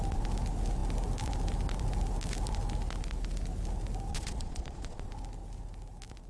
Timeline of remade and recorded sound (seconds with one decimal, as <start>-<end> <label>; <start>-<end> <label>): 0.0-4.1 recorded; 4.1-5.1 remade; 5.1-6.3 recorded